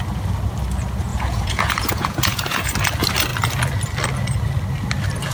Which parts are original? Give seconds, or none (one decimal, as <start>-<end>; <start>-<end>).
0.0-1.1; 2.7-5.3